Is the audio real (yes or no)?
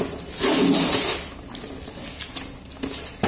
yes